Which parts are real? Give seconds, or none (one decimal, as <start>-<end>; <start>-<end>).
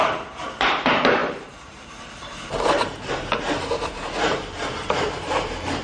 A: none